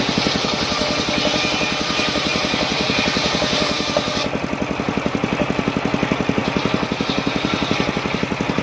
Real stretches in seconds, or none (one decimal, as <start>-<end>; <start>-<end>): 0.0-8.6